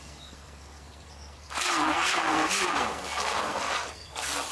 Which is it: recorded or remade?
remade